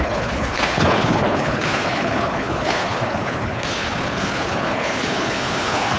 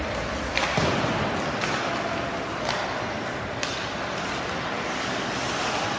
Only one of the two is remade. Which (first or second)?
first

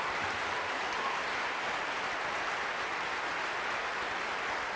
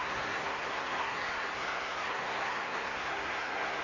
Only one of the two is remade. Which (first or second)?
second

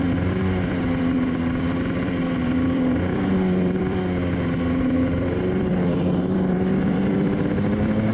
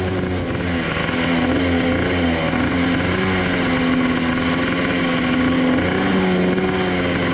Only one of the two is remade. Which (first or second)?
first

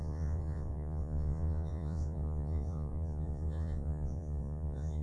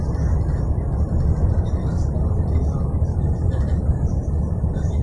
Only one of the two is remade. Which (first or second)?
first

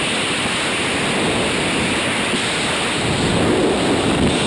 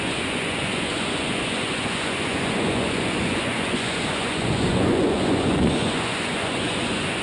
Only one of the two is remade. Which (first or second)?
second